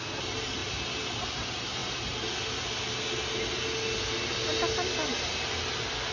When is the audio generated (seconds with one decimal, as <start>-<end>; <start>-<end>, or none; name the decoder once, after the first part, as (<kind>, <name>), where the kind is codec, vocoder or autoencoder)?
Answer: none